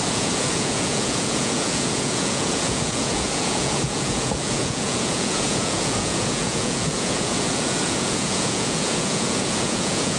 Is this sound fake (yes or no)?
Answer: yes